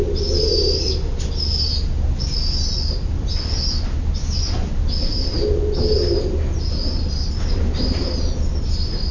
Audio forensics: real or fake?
real